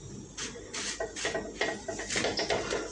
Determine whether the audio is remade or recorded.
recorded